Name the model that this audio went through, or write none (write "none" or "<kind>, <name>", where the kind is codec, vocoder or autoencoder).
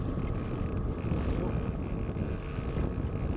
none